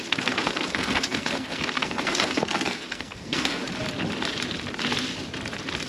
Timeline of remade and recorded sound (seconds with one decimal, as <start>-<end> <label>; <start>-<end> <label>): 0.0-3.6 remade; 3.6-5.9 recorded